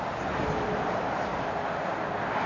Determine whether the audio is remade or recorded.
recorded